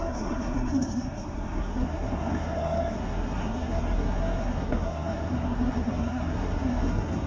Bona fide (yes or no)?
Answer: no